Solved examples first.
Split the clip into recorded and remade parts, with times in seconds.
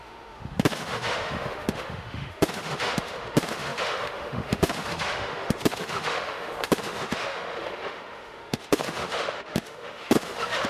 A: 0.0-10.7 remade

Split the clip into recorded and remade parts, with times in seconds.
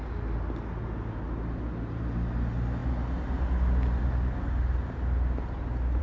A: 0.0-6.0 recorded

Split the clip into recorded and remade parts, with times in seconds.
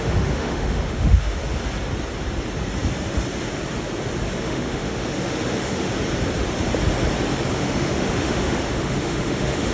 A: 0.0-1.4 remade; 1.4-4.4 recorded; 4.4-5.9 remade; 5.9-7.5 recorded; 7.5-9.7 remade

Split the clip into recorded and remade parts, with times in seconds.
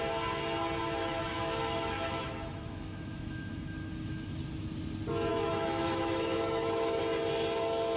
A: 0.0-1.0 recorded; 1.0-4.4 remade; 4.4-5.3 recorded; 5.3-7.0 remade; 7.0-8.0 recorded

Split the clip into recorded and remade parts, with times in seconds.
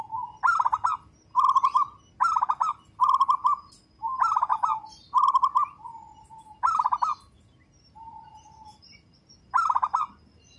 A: 0.0-10.6 recorded